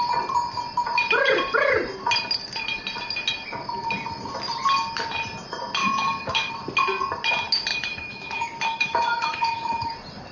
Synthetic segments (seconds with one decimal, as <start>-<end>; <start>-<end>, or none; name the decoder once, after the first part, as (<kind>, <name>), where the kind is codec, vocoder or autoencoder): 5.8-6.5 (autoencoder, DAC-VAE); 7.7-9.9